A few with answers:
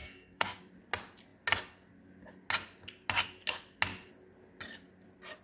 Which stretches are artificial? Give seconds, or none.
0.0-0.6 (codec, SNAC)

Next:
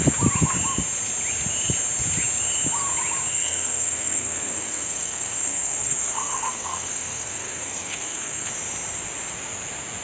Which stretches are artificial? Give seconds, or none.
3.3-8.5 (codec, SNAC)

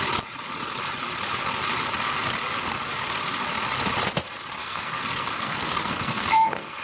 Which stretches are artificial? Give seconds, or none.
4.6-6.8 (codec, SNAC)

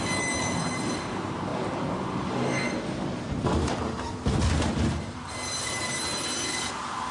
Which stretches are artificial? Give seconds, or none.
none

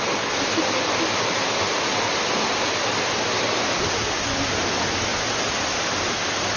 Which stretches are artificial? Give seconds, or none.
none

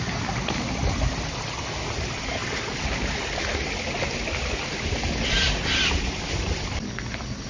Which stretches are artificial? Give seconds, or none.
none